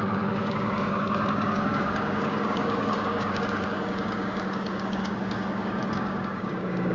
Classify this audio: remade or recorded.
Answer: remade